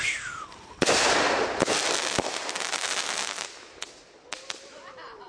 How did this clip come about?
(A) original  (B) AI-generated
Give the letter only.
A